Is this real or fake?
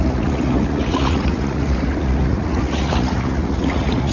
fake